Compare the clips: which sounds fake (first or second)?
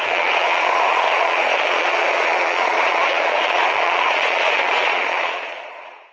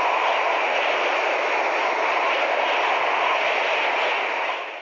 first